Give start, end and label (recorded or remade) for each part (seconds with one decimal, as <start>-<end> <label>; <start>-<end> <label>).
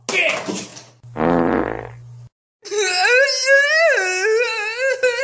0.0-5.2 recorded